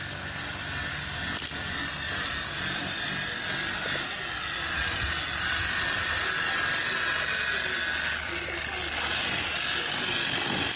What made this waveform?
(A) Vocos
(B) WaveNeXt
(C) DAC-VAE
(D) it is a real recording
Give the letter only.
D